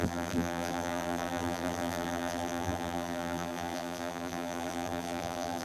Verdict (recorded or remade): remade